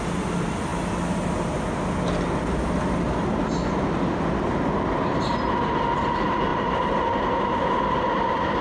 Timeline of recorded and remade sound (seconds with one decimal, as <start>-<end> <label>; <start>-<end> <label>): 0.0-8.6 recorded